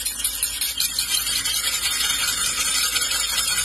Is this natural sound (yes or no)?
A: yes